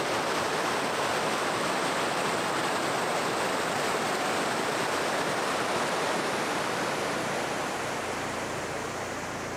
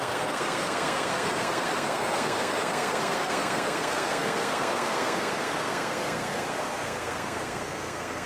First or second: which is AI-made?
second